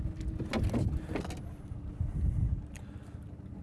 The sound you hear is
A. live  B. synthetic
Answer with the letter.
A